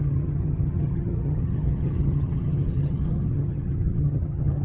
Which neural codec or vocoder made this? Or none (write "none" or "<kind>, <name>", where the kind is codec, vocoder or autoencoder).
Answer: vocoder, HiFi-GAN